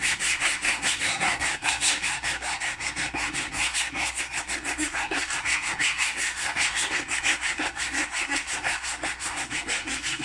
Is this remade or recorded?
remade